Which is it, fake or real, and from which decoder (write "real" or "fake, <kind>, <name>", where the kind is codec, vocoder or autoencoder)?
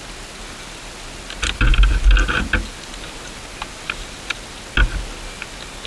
real